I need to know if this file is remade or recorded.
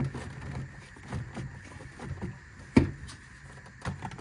recorded